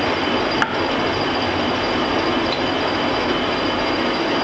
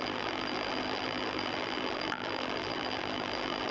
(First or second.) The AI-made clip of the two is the second